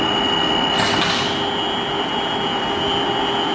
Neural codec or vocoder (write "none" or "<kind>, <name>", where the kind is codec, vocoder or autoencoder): none